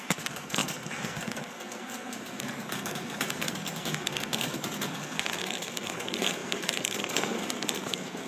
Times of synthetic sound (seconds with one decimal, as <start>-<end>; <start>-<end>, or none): 0.0-8.3